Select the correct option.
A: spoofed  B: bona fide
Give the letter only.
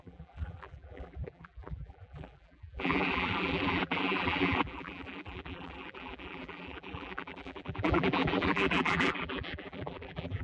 A